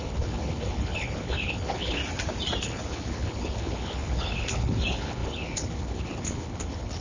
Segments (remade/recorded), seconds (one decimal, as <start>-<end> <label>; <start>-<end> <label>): 0.0-2.0 remade; 2.0-2.6 recorded; 2.6-7.0 remade